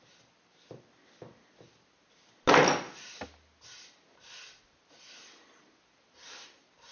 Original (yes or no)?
yes